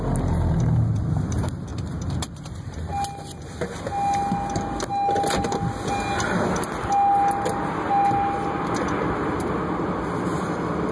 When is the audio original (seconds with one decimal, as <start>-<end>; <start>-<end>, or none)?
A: 0.0-10.9